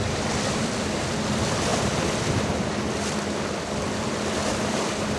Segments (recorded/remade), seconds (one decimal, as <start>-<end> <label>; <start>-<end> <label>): 0.0-5.2 recorded